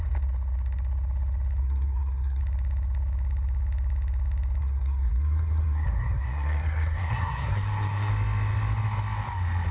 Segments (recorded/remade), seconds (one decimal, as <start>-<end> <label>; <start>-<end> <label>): 0.0-1.6 recorded; 1.6-2.4 remade; 2.4-4.6 recorded; 4.6-8.1 remade; 8.1-9.7 recorded